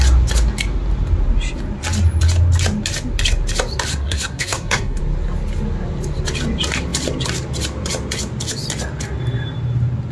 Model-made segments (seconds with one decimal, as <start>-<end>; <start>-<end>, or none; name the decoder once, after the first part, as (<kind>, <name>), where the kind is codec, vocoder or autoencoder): 3.9-5.0 (codec, SNAC)